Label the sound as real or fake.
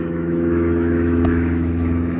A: fake